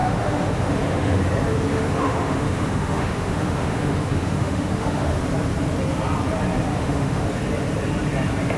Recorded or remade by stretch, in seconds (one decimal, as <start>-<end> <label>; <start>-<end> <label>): 0.0-1.2 remade; 1.2-1.7 recorded; 1.7-5.2 remade; 5.2-6.7 recorded; 6.7-7.3 remade; 7.3-8.6 recorded